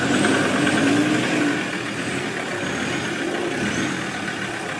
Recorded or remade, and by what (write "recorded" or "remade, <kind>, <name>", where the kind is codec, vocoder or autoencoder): recorded